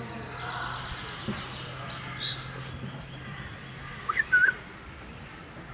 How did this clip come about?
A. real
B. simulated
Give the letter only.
A